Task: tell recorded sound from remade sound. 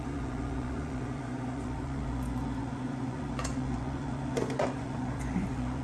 remade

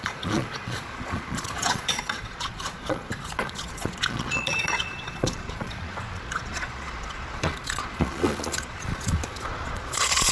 remade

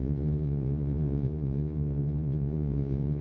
remade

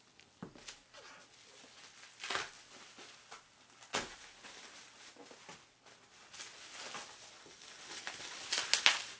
recorded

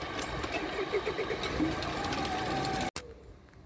recorded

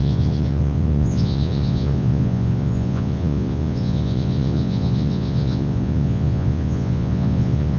remade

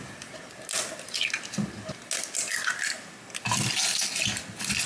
recorded